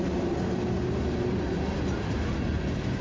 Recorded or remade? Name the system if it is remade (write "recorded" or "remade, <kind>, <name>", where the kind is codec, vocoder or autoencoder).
recorded